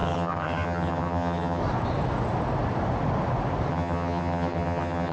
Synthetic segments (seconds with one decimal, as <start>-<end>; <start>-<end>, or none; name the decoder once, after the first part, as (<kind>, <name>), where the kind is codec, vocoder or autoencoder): 0.0-1.6 (vocoder, HiFi-GAN); 3.7-5.1

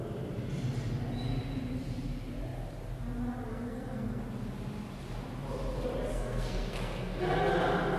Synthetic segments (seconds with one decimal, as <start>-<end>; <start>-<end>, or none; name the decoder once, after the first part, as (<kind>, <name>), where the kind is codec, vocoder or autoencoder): 3.5-4.2 (codec, SNAC); 6.1-7.2

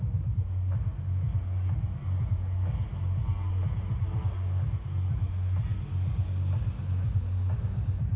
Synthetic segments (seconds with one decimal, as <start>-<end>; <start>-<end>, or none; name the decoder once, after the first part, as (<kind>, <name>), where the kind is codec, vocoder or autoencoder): none